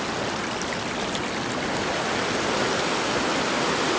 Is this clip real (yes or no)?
yes